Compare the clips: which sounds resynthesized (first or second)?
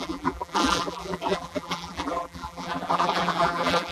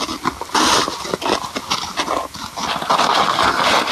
first